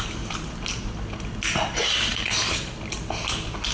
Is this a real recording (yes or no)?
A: yes